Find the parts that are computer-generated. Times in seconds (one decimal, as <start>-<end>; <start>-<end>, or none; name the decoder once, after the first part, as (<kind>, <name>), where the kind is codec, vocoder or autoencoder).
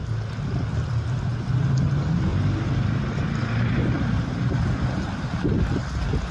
0.0-1.7 (vocoder, BigVGAN v2); 2.3-4.5